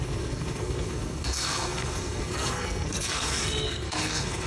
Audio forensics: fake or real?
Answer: fake